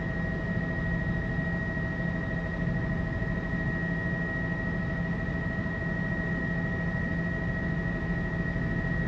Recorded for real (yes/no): yes